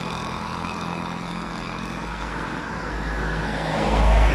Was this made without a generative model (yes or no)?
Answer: no